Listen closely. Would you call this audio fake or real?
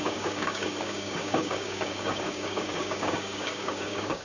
fake